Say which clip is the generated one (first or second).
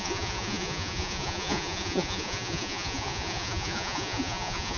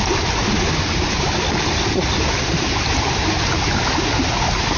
first